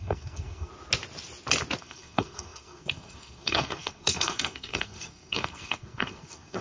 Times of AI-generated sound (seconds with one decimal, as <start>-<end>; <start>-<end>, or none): 0.0-0.7; 1.8-6.6